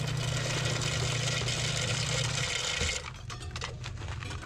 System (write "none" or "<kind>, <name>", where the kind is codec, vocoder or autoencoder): none